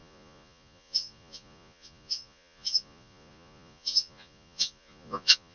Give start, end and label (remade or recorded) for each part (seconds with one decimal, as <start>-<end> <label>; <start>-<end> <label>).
0.0-5.5 remade